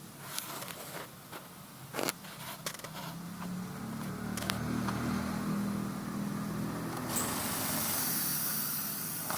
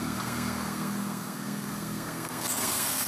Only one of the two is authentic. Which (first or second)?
first